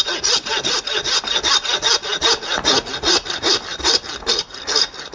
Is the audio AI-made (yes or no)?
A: no